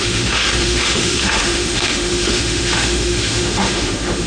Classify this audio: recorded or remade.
remade